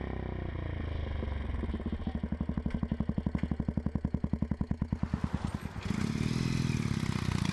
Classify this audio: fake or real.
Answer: real